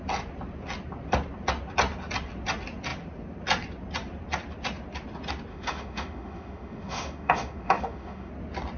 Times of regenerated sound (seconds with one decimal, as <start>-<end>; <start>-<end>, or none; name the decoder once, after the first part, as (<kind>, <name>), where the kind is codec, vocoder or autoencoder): 5.5-8.3 (autoencoder, DAC-VAE)

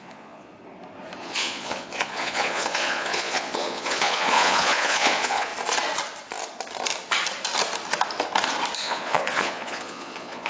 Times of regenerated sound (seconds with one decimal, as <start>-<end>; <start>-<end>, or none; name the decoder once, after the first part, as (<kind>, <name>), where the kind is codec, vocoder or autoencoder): 0.0-0.5 (vocoder, Vocos); 1.2-5.5; 8.8-10.5

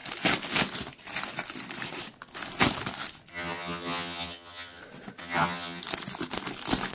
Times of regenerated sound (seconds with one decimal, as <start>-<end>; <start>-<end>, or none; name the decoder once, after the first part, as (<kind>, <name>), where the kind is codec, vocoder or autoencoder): 3.3-4.8 (vocoder, HiFi-GAN); 5.2-5.8

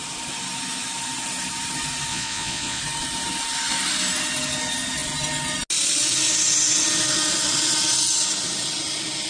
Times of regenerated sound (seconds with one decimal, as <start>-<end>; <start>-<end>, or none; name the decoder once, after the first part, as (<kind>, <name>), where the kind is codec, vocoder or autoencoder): 2.1-2.8 (vocoder, Vocos)

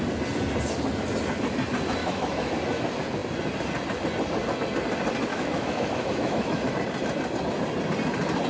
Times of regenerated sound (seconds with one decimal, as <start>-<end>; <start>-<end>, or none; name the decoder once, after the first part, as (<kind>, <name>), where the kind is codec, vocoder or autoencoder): 2.0-2.5 (autoencoder, DAC-VAE); 5.3-6.7

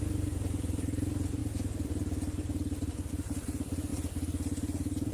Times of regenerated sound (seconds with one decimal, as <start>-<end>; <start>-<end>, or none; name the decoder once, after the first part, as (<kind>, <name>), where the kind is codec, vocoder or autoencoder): none

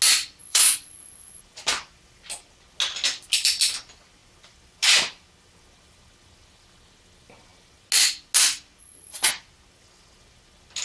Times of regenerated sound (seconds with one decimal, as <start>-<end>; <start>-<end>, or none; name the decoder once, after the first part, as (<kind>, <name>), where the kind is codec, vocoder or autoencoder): 0.4-1.4 (vocoder, Vocos); 8.8-9.3

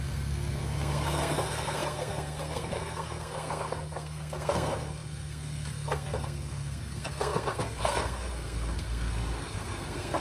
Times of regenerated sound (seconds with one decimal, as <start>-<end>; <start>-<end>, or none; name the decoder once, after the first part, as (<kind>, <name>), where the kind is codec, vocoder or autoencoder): 0.0-10.2 (codec, SNAC)